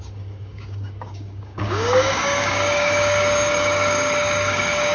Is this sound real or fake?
fake